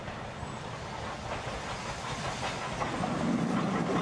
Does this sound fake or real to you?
real